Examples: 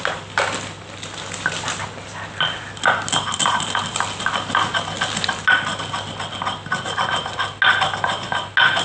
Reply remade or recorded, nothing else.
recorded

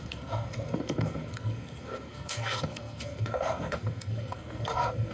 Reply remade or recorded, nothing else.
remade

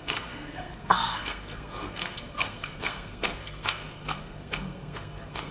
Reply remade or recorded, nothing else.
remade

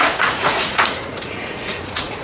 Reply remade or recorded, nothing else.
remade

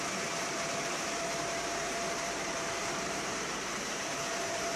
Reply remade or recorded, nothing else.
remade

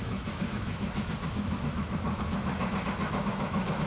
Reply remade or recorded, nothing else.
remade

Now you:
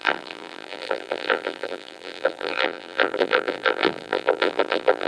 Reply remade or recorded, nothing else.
remade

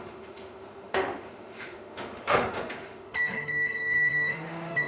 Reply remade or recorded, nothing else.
remade